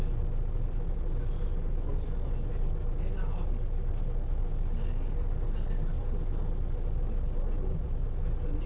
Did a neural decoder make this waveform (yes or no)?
no